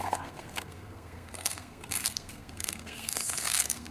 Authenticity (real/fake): fake